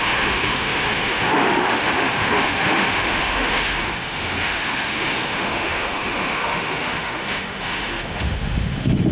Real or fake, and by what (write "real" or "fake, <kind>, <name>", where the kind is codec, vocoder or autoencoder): fake, autoencoder, DAC-VAE